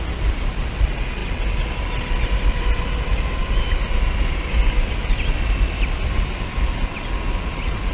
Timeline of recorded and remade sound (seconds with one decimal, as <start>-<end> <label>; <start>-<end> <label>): 0.0-7.9 recorded